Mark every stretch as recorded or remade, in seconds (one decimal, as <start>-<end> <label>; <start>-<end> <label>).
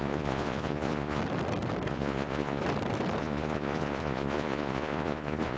0.0-1.2 remade; 1.2-1.9 recorded; 1.9-2.6 remade; 2.6-3.2 recorded; 3.2-5.6 remade